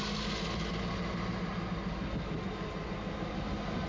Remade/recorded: recorded